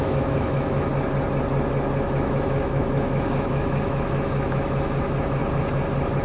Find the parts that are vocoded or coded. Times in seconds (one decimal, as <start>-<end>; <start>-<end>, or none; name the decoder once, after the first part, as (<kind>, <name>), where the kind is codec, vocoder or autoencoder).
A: 0.0-0.9 (autoencoder, DAC-VAE); 2.1-5.4